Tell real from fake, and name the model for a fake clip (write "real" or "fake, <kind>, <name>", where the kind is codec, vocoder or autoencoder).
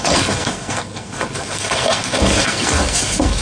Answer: fake, codec, SNAC